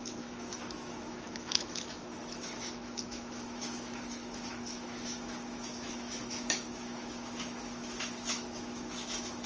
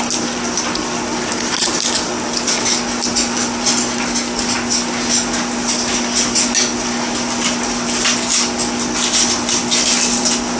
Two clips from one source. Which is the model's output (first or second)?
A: first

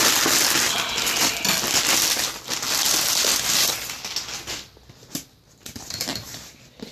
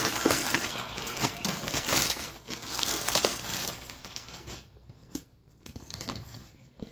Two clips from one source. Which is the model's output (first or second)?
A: second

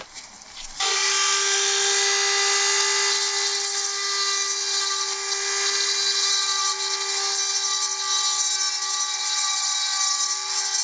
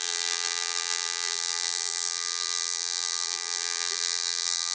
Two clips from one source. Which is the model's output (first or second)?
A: second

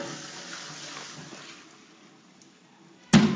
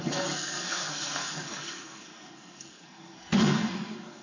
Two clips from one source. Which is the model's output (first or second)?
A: second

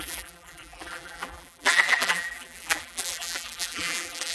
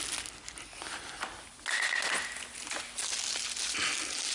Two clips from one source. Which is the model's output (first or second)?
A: first